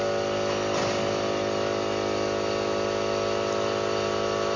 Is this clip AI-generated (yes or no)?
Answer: no